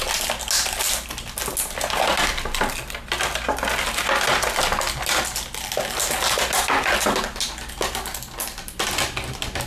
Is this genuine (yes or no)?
yes